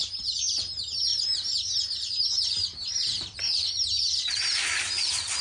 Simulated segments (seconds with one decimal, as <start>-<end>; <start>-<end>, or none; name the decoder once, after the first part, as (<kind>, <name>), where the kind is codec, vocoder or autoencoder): 0.0-5.4 (vocoder, BigVGAN v2)